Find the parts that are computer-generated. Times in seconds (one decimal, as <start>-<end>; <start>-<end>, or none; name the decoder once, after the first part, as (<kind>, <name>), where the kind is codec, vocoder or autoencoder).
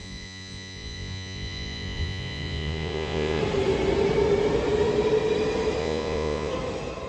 0.0-3.4 (vocoder, Vocos); 5.8-6.5